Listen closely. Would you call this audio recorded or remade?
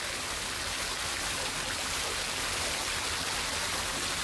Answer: recorded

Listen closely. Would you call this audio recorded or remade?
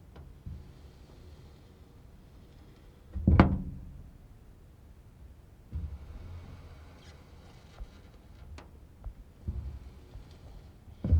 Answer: recorded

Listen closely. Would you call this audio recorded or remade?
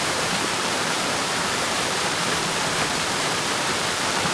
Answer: remade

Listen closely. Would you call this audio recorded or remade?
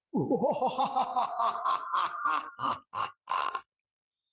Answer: remade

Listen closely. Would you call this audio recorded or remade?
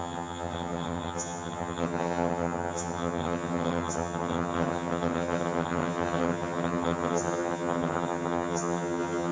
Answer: remade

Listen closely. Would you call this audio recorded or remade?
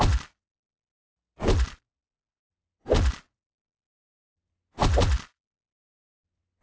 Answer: recorded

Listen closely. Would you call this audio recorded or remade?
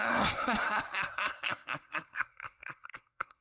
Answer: remade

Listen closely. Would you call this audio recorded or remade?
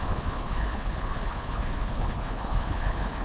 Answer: remade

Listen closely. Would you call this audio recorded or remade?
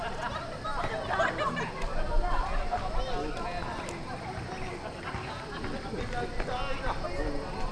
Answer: recorded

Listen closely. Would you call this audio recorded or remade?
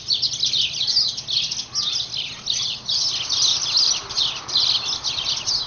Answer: recorded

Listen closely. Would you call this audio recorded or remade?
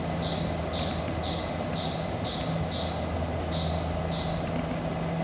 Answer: recorded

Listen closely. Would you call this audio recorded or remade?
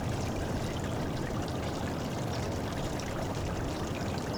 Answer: remade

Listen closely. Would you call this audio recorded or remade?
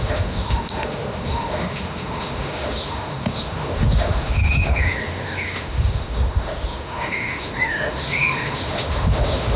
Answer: remade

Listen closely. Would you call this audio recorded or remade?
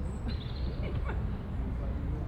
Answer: recorded